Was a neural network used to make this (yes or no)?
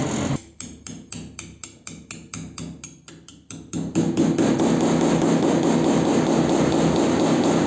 no